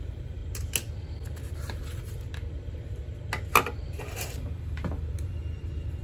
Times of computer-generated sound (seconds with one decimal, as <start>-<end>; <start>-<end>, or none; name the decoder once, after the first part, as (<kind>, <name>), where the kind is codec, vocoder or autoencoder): 0.0-0.4 (vocoder, BigVGAN v2); 4.0-6.0